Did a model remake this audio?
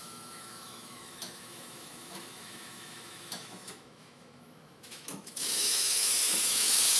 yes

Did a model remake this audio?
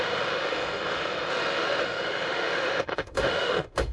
yes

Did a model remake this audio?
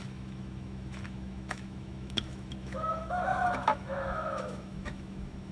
yes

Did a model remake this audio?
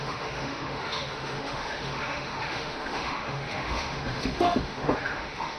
yes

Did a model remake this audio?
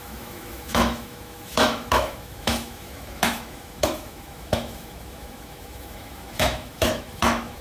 yes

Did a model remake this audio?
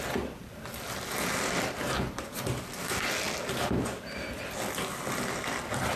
no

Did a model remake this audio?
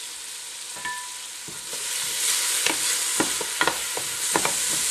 no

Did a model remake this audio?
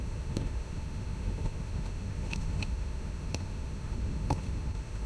yes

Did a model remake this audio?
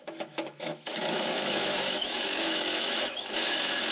yes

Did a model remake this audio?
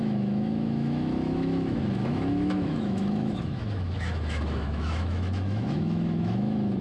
yes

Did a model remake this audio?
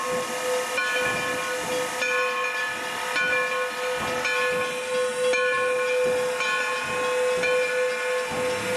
no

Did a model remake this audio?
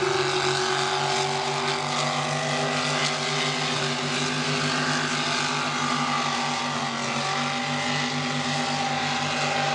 no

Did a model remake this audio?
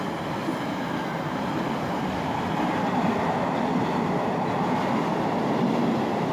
no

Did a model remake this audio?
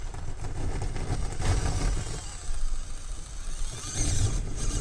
no